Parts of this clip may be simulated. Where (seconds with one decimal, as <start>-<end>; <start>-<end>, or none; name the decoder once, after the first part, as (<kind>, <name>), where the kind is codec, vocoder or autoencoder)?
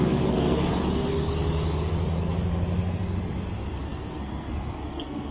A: 0.0-0.7 (codec, SNAC); 3.8-5.3